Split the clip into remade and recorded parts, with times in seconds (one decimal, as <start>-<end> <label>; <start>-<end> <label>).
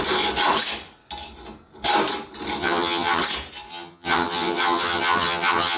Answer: 0.0-2.6 recorded; 2.6-3.2 remade; 3.2-3.7 recorded; 3.7-5.8 remade